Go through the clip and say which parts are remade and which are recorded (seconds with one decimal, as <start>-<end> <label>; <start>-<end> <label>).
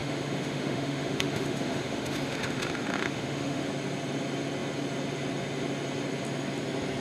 0.0-3.7 remade; 3.7-7.0 recorded